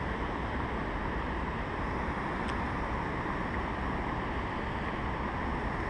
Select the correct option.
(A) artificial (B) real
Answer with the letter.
B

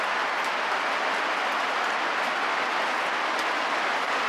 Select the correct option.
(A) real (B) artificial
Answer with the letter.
A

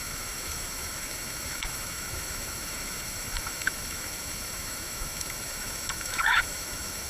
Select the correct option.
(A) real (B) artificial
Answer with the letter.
B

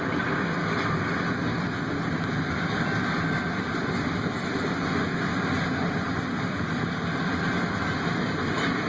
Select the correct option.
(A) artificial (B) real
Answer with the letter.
B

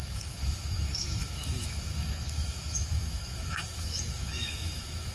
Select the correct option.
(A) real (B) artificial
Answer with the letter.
B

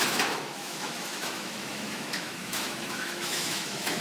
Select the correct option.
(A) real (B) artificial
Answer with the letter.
B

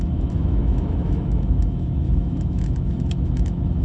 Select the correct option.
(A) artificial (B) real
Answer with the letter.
A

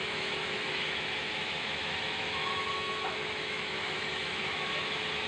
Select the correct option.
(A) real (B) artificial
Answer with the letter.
B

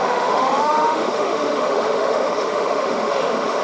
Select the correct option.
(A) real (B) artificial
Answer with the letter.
B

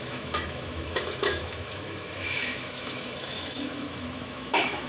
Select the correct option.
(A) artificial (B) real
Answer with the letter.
A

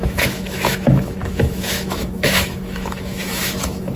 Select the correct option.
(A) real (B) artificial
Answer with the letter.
B